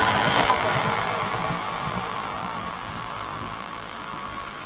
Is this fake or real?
fake